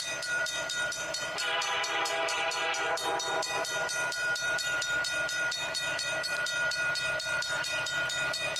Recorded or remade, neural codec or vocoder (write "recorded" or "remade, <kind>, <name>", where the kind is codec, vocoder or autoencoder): remade, vocoder, BigVGAN v2